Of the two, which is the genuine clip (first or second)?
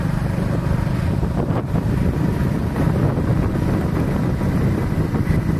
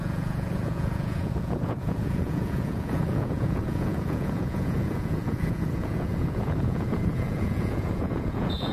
first